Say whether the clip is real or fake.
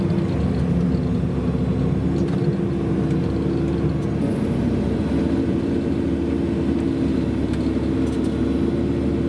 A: real